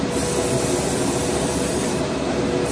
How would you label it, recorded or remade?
recorded